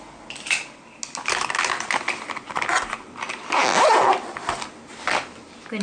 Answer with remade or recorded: recorded